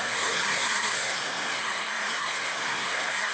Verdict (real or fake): fake